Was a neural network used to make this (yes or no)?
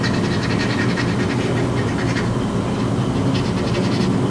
no